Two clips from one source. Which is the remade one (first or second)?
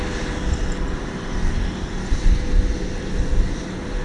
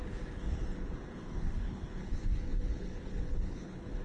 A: second